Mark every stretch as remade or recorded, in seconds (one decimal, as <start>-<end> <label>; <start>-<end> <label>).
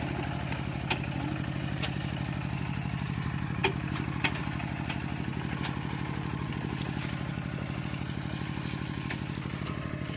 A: 0.0-10.2 recorded